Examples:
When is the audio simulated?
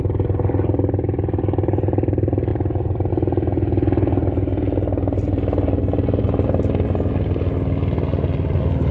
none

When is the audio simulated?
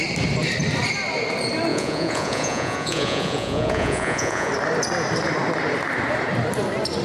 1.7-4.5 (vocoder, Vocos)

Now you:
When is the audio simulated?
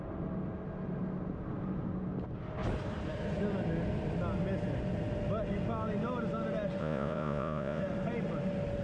6.8-7.8 (vocoder, Vocos)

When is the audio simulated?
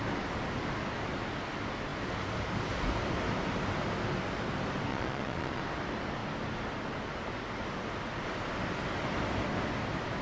4.9-5.6 (vocoder, Vocos)